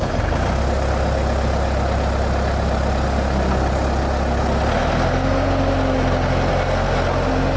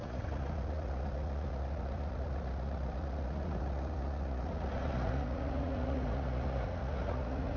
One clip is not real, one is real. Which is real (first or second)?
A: first